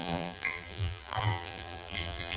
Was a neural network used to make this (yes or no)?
yes